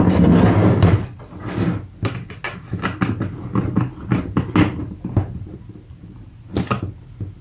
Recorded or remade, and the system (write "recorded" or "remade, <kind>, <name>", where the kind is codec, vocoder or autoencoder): recorded